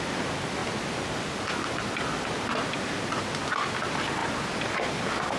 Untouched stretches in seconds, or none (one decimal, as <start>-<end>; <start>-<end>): 0.0-5.4